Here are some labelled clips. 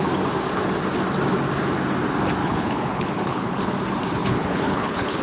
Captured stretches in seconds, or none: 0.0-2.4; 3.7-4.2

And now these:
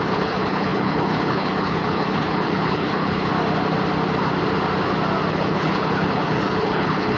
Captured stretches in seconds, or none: 3.3-5.3

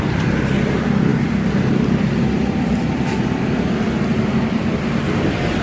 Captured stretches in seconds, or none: 0.0-5.6